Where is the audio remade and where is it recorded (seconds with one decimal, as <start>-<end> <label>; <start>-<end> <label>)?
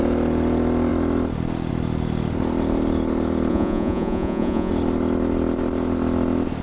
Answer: 0.0-3.5 recorded; 3.5-4.7 remade; 4.7-6.6 recorded